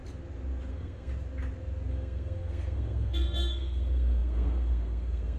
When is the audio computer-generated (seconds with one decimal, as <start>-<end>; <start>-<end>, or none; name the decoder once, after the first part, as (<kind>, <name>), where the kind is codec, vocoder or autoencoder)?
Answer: 0.7-1.1 (codec, SNAC); 1.9-5.4